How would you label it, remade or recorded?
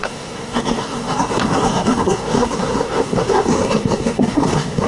remade